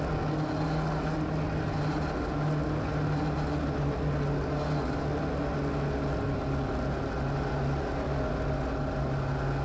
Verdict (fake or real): real